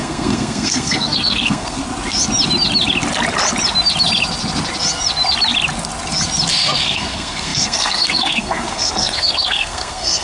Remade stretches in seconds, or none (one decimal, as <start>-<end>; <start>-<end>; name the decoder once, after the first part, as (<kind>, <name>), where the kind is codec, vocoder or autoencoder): 0.0-1.8 (codec, SNAC); 6.5-10.2